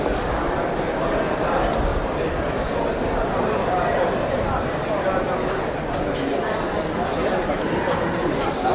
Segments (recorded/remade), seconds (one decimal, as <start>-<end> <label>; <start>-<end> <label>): 0.0-1.9 recorded; 1.9-2.5 remade; 2.5-8.7 recorded